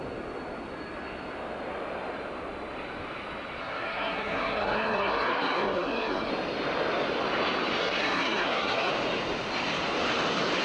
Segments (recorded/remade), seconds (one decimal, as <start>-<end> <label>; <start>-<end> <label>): 0.0-3.6 recorded; 3.6-6.3 remade; 6.3-7.8 recorded; 7.8-8.9 remade; 8.9-10.6 recorded